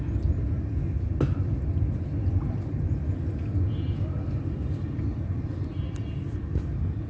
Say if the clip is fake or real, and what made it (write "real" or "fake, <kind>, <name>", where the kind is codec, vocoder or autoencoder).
real